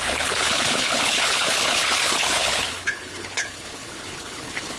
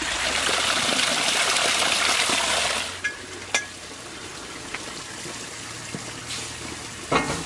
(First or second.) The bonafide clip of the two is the second